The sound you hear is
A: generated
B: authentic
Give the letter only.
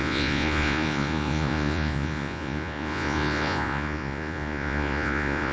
A